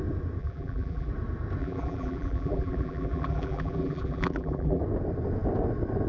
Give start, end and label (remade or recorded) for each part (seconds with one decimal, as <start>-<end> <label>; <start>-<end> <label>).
0.0-0.4 recorded; 0.4-1.1 remade; 1.1-1.6 recorded; 1.6-4.8 remade; 4.8-6.1 recorded